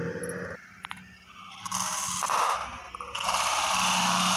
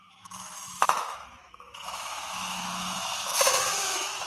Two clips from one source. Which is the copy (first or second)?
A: second